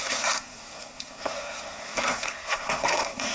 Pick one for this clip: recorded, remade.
remade